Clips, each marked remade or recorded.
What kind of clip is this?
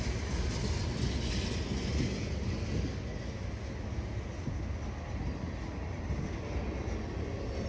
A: recorded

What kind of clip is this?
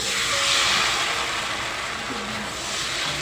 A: recorded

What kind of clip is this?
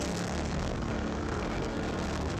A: remade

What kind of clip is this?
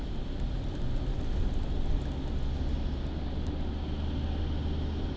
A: recorded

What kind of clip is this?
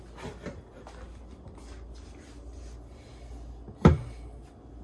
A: recorded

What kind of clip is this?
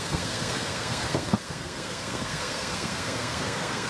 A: remade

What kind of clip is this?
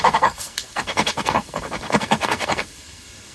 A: remade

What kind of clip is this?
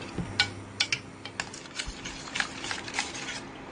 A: recorded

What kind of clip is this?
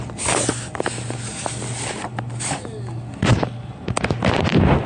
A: recorded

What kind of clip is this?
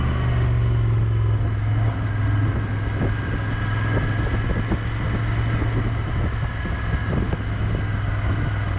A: recorded